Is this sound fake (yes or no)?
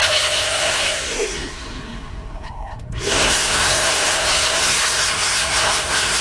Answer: yes